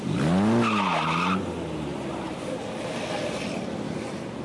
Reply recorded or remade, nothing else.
recorded